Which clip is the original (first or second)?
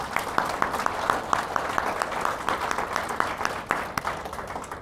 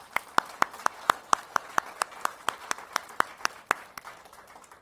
first